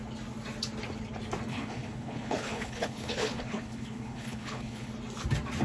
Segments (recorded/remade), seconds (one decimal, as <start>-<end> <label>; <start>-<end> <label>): 0.0-1.5 recorded; 1.5-4.9 remade; 4.9-5.6 recorded